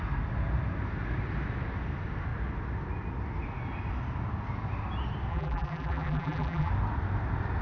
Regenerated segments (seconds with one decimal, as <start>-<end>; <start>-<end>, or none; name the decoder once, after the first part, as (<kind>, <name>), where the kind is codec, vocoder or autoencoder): 5.3-6.7 (vocoder, BigVGAN v2)